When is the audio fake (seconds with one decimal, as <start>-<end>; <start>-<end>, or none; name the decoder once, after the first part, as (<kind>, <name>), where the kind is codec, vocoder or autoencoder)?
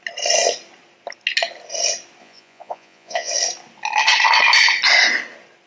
2.2-3.3 (vocoder, Vocos)